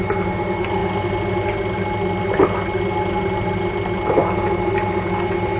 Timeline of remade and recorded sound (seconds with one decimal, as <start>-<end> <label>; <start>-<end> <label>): 0.0-5.6 recorded

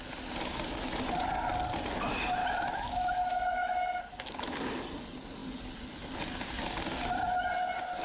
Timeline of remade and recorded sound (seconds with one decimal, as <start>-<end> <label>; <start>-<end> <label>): 0.0-2.4 recorded; 2.4-4.0 remade; 4.0-8.0 recorded

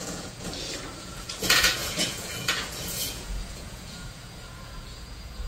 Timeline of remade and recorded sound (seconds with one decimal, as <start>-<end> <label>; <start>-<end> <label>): 0.0-0.5 remade; 0.5-1.0 recorded; 1.0-5.5 remade

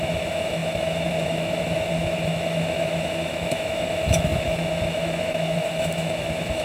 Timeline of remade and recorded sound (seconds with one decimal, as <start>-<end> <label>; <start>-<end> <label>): 0.0-6.6 remade

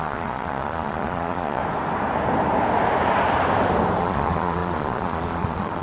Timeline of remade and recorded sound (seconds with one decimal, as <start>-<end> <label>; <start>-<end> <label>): 0.0-1.6 remade; 1.6-4.0 recorded; 4.0-5.8 remade

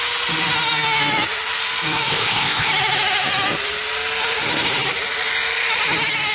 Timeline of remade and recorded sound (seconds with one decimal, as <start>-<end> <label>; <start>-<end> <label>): 0.0-2.1 recorded; 2.1-2.7 remade; 2.7-6.3 recorded